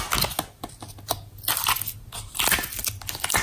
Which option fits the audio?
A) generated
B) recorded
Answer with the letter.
B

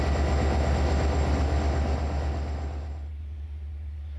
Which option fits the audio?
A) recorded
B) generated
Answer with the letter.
A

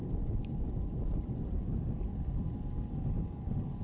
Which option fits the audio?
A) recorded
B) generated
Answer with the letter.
A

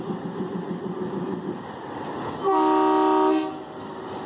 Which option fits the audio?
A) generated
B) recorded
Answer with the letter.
B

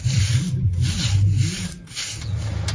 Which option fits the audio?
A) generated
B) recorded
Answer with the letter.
B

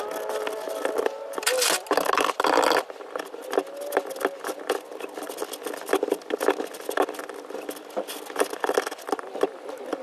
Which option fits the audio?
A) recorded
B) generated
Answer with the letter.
A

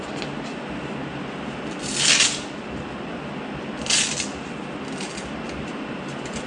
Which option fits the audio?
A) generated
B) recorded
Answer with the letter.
B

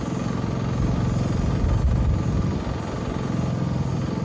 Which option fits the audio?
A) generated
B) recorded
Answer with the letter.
B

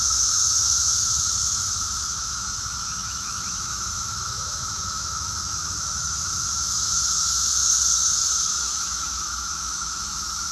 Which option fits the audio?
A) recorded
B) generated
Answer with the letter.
B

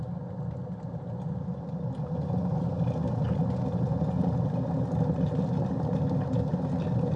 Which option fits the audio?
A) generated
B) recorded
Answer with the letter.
B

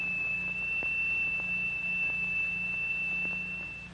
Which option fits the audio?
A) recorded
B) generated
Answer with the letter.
A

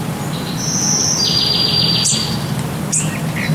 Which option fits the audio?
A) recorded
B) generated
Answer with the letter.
A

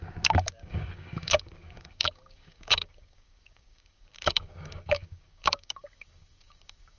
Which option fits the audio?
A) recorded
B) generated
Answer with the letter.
B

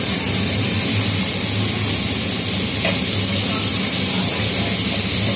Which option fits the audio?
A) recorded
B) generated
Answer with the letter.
A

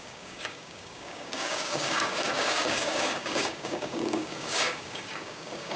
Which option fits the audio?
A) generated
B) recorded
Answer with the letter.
A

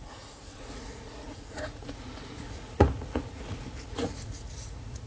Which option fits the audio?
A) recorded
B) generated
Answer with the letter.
B